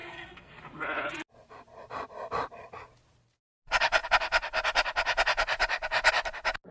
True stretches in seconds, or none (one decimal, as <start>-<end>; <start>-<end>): 0.6-6.7